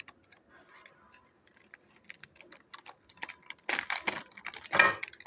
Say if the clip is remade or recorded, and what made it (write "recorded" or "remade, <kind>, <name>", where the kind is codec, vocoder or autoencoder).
recorded